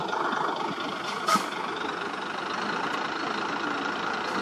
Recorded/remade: recorded